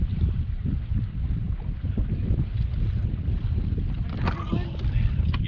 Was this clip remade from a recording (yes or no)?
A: no